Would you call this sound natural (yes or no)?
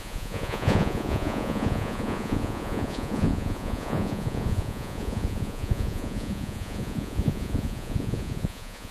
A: no